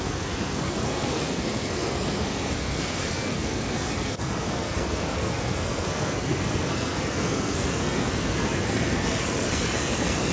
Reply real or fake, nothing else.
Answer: fake